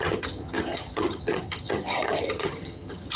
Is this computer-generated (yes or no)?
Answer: yes